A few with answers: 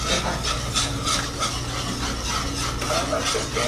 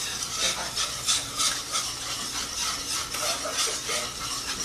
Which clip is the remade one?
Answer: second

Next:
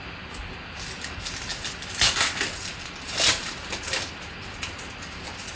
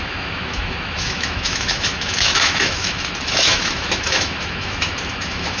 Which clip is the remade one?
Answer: second